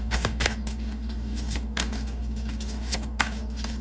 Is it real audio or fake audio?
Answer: fake